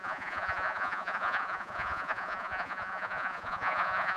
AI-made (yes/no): yes